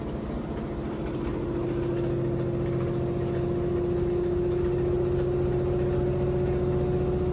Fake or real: real